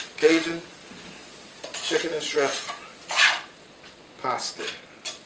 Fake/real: fake